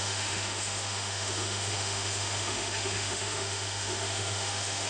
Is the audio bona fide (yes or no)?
no